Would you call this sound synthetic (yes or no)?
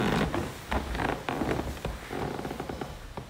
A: no